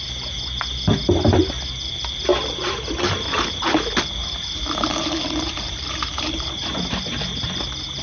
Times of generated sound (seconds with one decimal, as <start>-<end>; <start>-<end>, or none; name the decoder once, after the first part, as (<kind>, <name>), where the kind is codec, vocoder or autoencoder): 4.2-7.2 (vocoder, BigVGAN v2)